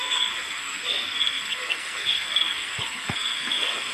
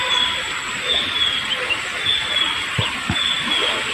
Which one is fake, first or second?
first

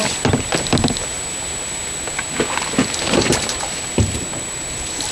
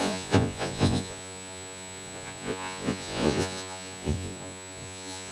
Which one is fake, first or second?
second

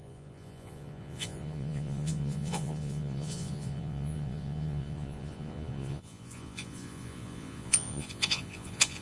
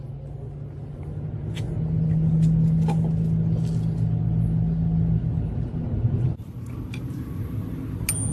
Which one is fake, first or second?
first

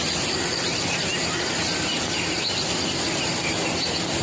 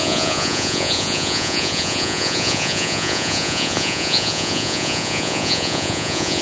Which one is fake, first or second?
second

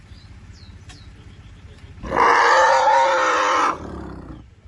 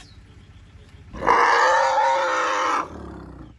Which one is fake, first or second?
first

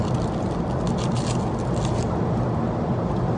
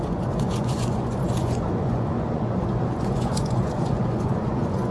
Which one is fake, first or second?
second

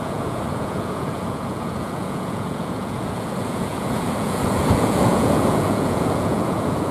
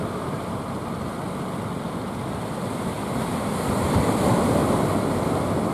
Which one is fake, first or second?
first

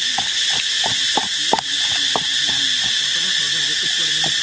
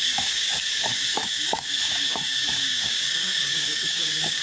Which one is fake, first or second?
second